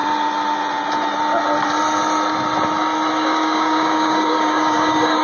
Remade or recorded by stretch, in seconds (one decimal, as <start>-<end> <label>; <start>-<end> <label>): 0.0-3.1 recorded; 3.1-5.2 remade